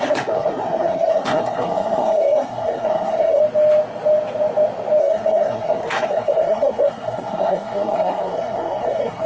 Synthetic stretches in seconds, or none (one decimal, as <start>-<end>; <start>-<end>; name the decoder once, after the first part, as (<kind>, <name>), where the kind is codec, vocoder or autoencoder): 0.0-3.4 (codec, SNAC); 5.0-9.3